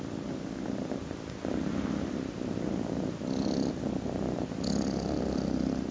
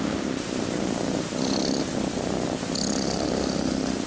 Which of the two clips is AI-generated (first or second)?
second